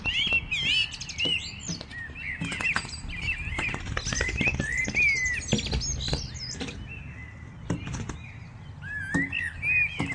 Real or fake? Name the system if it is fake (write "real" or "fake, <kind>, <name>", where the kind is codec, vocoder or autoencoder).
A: real